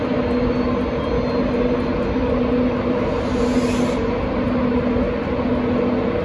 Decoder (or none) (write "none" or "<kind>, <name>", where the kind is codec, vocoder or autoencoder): none